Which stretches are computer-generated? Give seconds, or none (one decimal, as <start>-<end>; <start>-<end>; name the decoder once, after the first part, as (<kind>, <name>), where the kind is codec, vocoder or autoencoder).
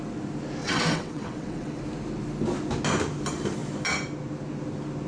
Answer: 0.6-1.8 (vocoder, WaveNeXt)